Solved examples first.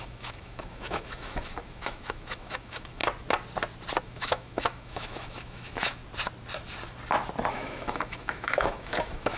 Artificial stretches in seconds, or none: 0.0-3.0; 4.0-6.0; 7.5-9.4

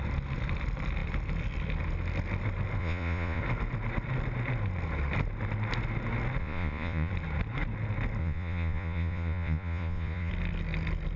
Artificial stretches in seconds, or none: 2.8-3.4; 6.4-7.1; 8.2-10.3

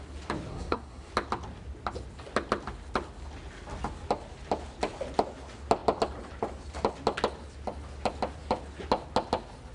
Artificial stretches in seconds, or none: 0.5-1.1

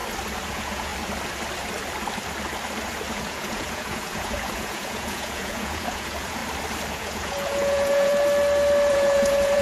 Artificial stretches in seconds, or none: 0.5-0.9; 3.1-6.4; 6.9-8.1; 8.9-9.6

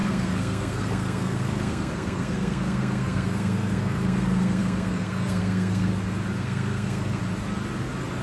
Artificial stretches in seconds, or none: 0.0-5.9; 6.4-7.2